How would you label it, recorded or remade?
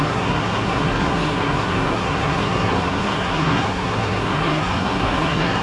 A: remade